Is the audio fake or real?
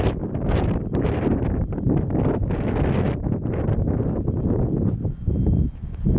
real